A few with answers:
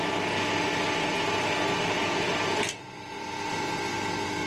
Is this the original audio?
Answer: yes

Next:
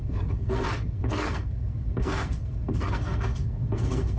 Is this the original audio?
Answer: no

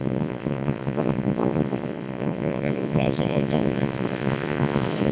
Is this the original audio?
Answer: no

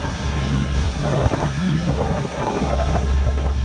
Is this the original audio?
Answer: no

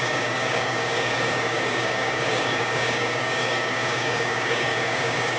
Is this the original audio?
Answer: no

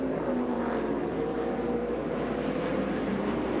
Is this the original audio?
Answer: no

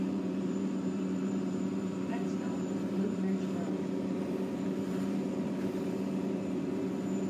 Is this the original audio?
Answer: no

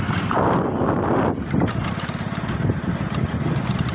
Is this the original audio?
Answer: yes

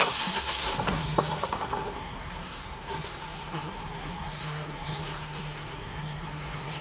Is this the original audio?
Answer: no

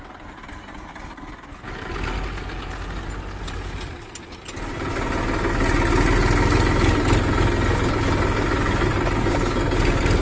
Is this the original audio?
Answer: yes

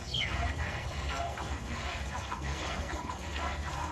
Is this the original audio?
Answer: no